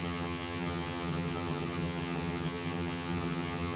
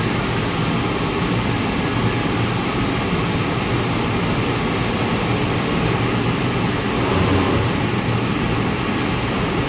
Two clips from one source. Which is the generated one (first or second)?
first